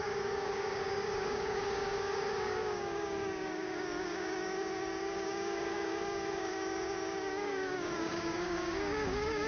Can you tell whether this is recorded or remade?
remade